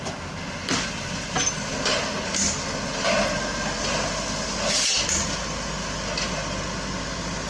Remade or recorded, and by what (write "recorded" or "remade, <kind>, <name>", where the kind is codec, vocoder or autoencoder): recorded